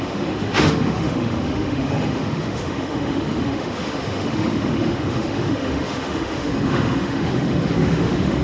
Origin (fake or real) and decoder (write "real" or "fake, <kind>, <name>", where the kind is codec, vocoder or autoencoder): fake, autoencoder, DAC-VAE